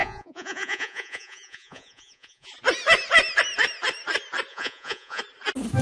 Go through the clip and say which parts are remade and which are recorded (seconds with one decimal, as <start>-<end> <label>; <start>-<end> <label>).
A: 0.0-2.5 remade; 2.5-4.5 recorded; 4.5-5.2 remade; 5.2-5.8 recorded